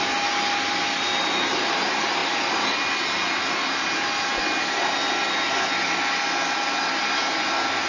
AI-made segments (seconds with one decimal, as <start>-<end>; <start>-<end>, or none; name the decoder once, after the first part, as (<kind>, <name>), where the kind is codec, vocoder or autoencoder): none